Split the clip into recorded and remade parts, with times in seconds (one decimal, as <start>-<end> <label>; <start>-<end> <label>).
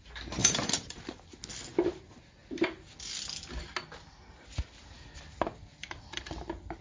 0.0-0.4 recorded; 0.4-1.2 remade; 1.2-5.7 recorded; 5.7-6.2 remade; 6.2-6.8 recorded